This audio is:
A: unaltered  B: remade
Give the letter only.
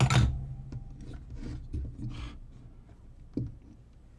A